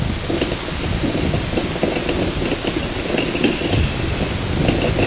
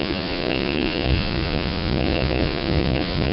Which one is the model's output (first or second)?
second